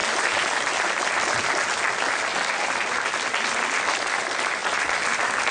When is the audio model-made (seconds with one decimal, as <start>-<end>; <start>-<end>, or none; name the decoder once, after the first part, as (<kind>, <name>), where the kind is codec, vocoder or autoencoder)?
none

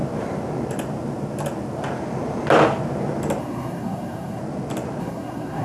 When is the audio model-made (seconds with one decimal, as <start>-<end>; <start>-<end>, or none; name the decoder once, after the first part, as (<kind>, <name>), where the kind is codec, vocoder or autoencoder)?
3.4-4.4 (codec, SNAC); 5.0-5.6